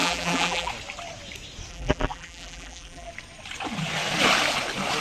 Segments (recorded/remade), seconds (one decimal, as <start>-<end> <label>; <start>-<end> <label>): 0.0-0.7 remade; 0.7-1.7 recorded; 1.7-3.1 remade; 3.1-5.0 recorded